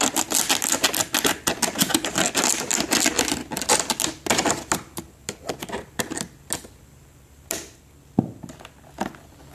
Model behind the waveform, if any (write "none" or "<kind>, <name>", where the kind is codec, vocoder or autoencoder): none